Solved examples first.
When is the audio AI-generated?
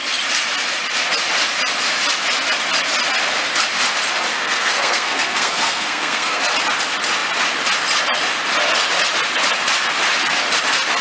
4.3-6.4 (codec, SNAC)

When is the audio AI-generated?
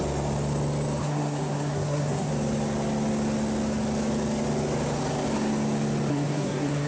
1.0-2.3 (codec, SNAC); 6.1-6.9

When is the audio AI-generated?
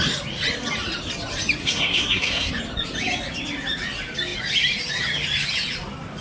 1.6-2.5 (codec, SNAC)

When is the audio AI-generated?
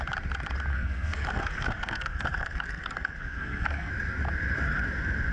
0.7-3.9 (codec, SNAC)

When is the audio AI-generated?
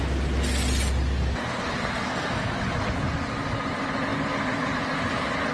1.8-2.5 (codec, SNAC)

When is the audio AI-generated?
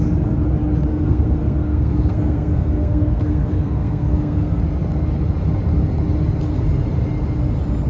0.9-4.6 (codec, SNAC)